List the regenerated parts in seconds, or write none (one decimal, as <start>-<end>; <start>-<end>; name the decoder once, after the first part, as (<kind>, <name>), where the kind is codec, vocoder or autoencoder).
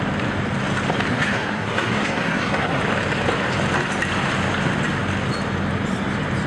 1.1-2.8 (codec, SNAC)